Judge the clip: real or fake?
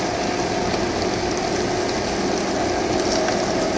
real